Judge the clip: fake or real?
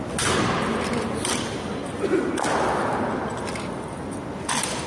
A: real